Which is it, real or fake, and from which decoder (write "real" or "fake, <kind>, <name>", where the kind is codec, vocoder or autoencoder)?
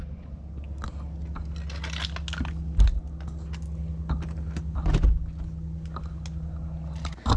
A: real